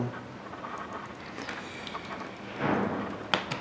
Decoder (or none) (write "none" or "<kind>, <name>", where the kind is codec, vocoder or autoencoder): none